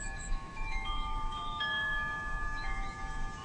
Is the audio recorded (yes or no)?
no